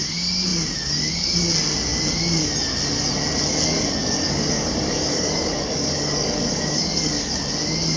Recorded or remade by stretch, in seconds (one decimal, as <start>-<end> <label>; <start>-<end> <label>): 0.0-4.0 recorded; 4.0-7.3 remade; 7.3-8.0 recorded